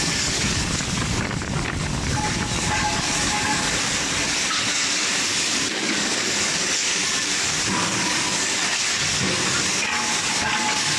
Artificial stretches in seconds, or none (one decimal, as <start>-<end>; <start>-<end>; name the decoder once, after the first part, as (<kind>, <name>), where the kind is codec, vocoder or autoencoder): 0.0-11.0 (codec, DAC)